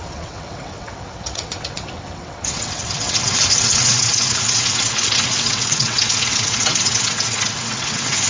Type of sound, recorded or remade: remade